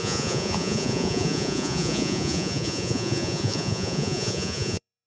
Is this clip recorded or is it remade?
remade